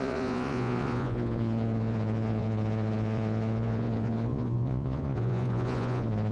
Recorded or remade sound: remade